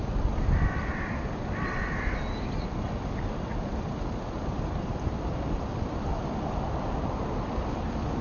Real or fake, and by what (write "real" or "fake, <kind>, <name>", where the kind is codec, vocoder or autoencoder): real